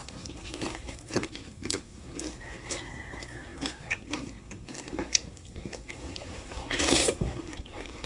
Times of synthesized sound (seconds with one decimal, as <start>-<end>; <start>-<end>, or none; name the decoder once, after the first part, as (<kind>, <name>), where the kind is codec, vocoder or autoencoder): 0.0-8.1 (codec, SNAC)